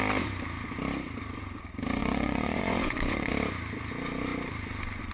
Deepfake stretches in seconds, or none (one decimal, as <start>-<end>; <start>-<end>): 2.0-3.3